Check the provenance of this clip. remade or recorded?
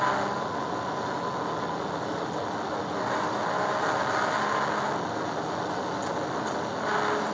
recorded